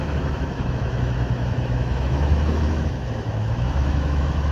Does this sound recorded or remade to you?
remade